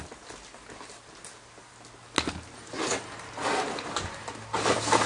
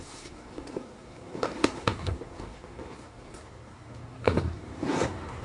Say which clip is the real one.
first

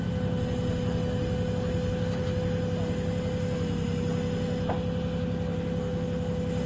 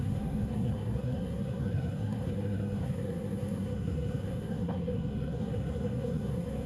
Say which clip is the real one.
first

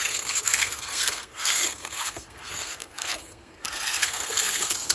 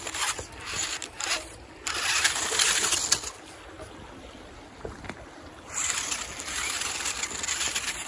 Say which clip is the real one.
second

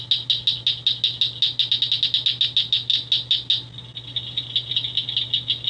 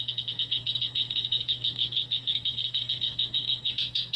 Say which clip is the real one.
first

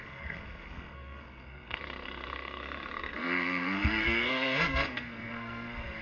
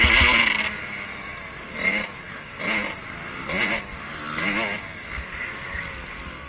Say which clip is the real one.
second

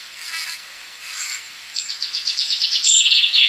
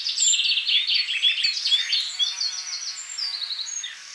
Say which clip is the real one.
second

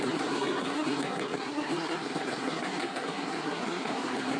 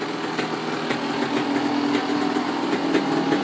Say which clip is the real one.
second